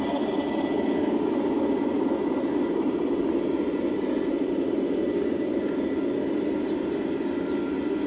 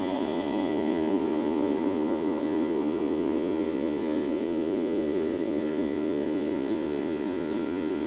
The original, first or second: first